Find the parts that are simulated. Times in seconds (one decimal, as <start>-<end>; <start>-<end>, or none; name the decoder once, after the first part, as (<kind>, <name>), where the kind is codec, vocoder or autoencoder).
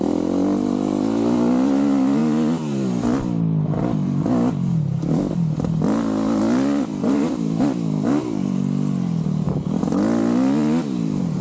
none